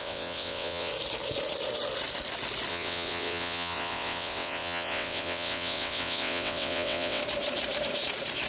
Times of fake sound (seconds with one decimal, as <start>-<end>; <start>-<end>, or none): 0.0-0.9; 2.7-7.2